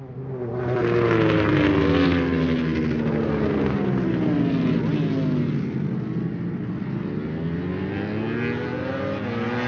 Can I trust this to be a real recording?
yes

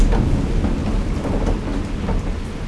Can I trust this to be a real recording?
yes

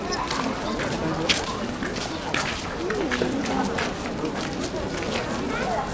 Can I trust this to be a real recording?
yes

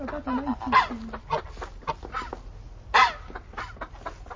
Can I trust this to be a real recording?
yes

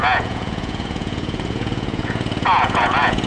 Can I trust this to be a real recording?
no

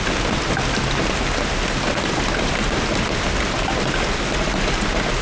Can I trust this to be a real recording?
yes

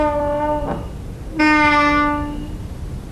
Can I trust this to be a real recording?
yes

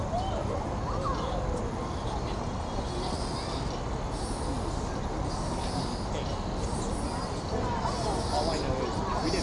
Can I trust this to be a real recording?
yes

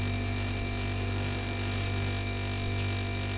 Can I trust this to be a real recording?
yes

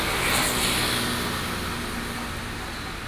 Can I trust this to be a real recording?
yes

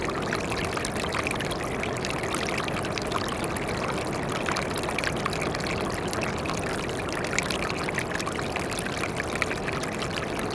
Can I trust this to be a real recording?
yes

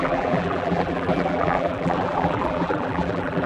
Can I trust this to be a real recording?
no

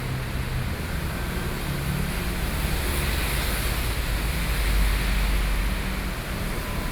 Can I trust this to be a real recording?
yes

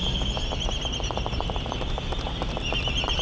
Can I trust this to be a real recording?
yes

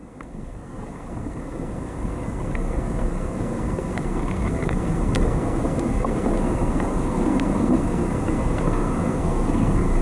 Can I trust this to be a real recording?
no